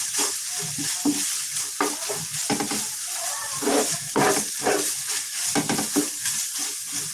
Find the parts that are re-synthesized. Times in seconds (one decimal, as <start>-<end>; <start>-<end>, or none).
3.0-4.0